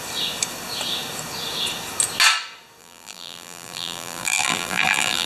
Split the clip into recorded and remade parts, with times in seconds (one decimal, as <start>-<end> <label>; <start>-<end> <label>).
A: 0.0-2.8 recorded; 2.8-5.3 remade